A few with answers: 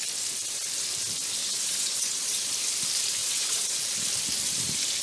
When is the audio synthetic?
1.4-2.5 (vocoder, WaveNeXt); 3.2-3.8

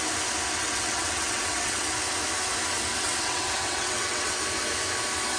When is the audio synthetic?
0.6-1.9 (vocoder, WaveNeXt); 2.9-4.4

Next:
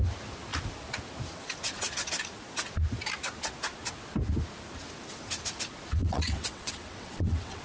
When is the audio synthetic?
6.0-7.6 (vocoder, WaveNeXt)

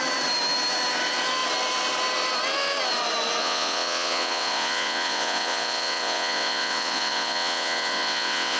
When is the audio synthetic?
3.4-8.6 (vocoder, WaveNeXt)